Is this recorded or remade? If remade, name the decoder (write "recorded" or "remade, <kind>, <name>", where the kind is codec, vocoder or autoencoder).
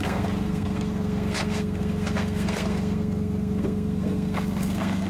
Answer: remade, codec, SNAC